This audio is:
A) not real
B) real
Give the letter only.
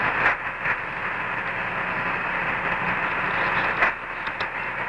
B